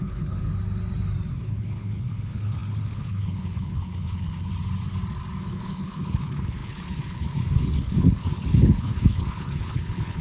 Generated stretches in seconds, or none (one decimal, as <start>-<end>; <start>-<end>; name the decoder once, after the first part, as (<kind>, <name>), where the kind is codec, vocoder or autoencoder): 0.0-0.5 (codec, HILCodec); 1.3-4.5; 5.4-10.2